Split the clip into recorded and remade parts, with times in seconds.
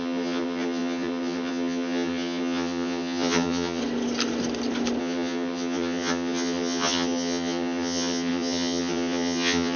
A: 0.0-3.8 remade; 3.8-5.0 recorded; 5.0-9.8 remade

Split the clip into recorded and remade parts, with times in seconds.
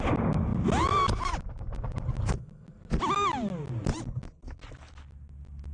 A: 0.0-5.7 recorded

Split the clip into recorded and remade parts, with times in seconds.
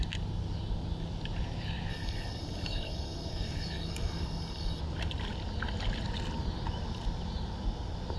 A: 0.0-1.9 recorded; 1.9-4.8 remade; 4.8-8.2 recorded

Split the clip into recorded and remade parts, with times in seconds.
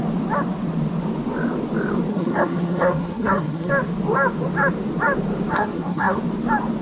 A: 0.0-2.1 recorded; 2.1-3.7 remade; 3.7-5.5 recorded; 5.5-6.2 remade; 6.2-6.8 recorded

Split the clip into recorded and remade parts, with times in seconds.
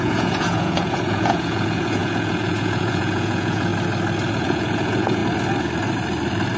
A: 0.0-3.7 remade; 3.7-4.3 recorded; 4.3-5.2 remade; 5.2-6.6 recorded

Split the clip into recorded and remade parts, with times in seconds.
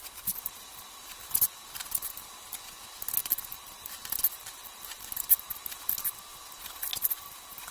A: 0.0-6.9 recorded; 6.9-7.7 remade